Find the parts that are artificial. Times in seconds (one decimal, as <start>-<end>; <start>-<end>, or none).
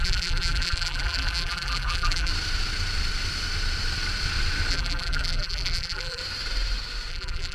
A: 0.0-2.3; 4.7-6.2; 7.1-7.5